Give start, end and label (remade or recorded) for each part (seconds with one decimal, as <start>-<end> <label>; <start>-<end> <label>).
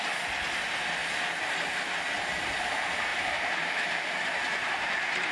0.0-3.1 recorded; 3.1-4.0 remade; 4.0-5.3 recorded